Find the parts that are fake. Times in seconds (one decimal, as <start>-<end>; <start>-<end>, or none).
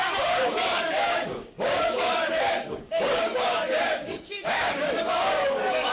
0.0-5.9